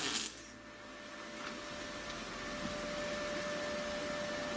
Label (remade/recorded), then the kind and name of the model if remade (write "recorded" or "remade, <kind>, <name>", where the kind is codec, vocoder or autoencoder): recorded